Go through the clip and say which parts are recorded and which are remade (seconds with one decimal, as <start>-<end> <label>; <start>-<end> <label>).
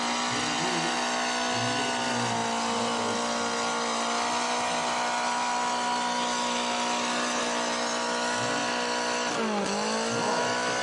0.0-10.8 recorded